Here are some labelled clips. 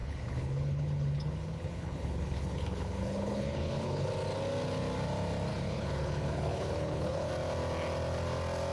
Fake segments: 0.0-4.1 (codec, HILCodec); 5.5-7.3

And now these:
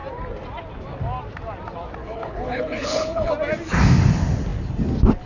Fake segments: 2.0-3.3 (codec, HILCodec)

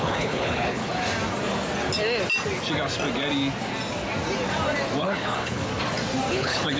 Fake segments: 0.0-0.9 (codec, HILCodec); 5.0-5.7; 6.3-6.8

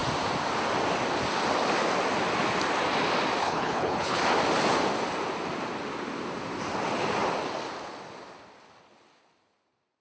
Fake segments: 3.4-4.2 (codec, HILCodec)

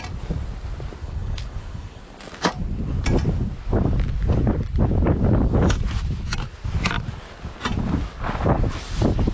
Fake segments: 1.0-2.0 (codec, HILCodec)

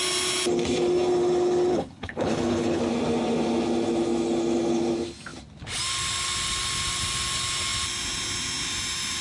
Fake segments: 1.7-2.8 (codec, HILCodec)